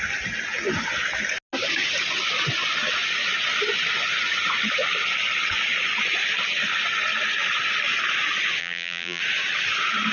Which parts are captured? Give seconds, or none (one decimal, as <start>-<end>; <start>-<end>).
0.0-8.6; 9.2-10.1